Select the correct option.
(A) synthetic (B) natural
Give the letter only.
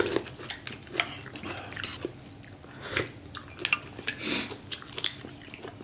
B